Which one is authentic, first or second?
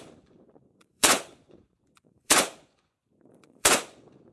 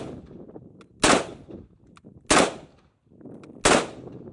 second